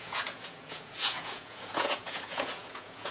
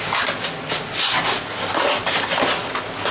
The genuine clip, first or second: second